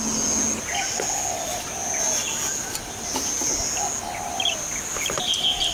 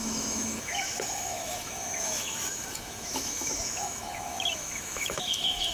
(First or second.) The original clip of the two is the first